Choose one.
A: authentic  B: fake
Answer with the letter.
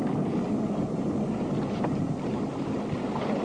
A